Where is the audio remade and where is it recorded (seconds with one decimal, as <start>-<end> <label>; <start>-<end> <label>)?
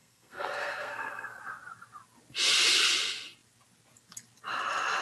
0.0-1.4 remade; 1.4-5.0 recorded